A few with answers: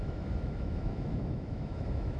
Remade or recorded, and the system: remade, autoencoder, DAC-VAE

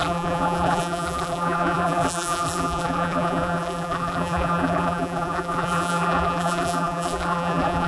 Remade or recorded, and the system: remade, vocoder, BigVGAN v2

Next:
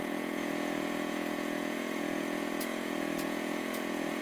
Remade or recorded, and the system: remade, vocoder, Vocos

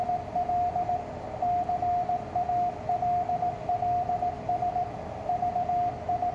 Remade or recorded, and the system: recorded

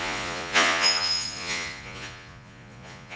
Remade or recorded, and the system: remade, vocoder, Vocos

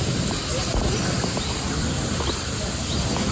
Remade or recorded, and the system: recorded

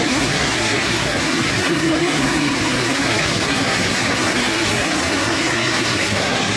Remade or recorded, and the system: remade, codec, SNAC